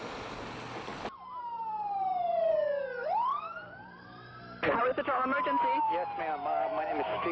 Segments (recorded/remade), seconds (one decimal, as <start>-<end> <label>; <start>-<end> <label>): 0.0-2.6 recorded; 2.6-4.8 remade; 4.8-7.3 recorded